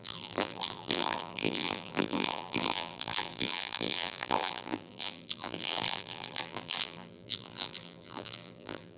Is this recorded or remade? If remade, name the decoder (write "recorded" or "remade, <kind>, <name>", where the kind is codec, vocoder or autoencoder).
remade, vocoder, BigVGAN v2